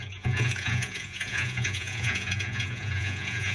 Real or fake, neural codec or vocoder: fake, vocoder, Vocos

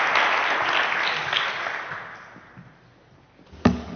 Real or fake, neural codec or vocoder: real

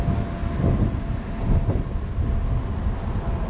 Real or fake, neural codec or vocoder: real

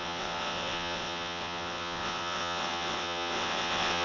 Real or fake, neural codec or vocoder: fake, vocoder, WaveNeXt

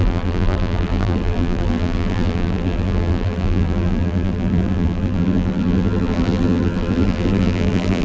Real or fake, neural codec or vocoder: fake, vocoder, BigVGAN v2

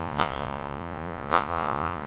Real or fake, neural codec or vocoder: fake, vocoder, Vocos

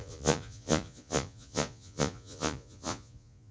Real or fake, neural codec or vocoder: fake, vocoder, Vocos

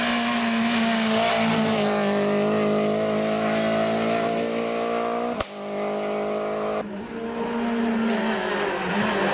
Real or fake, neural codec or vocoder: real